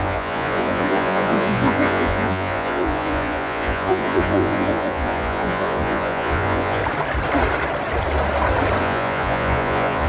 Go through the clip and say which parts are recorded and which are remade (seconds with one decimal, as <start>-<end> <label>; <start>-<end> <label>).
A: 0.0-6.8 remade; 6.8-8.8 recorded; 8.8-10.1 remade